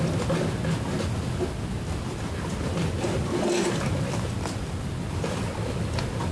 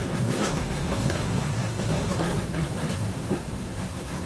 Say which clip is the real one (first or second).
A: first